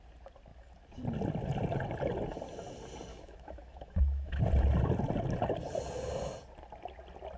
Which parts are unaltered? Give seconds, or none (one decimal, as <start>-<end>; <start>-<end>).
0.0-3.1; 4.4-7.4